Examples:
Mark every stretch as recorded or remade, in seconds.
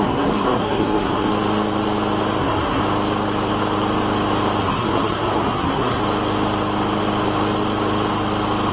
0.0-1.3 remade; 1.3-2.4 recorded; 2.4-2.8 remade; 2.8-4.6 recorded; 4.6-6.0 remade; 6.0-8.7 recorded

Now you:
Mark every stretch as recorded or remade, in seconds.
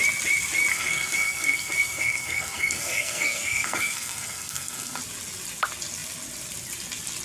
0.0-0.7 recorded; 0.7-5.0 remade; 5.0-7.2 recorded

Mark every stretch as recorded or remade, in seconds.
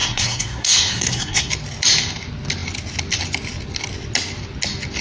0.0-1.5 remade; 1.5-5.0 recorded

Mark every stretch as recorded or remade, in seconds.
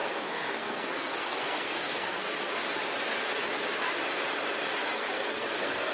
0.0-2.6 remade; 2.6-4.8 recorded; 4.8-5.9 remade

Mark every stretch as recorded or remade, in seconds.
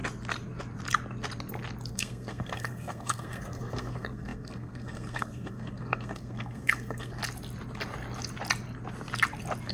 0.0-1.9 recorded; 1.9-7.2 remade; 7.2-9.7 recorded